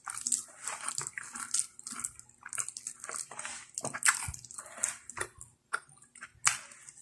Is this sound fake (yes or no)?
no